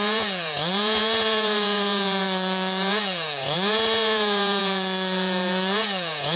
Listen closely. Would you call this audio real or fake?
fake